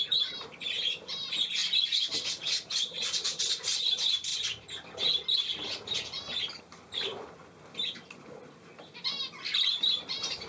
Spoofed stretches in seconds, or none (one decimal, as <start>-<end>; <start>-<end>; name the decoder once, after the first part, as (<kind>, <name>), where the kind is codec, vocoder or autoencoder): 0.0-4.3 (vocoder, BigVGAN v2); 6.6-7.1; 9.7-10.5